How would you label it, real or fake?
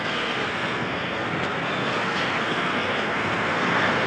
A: fake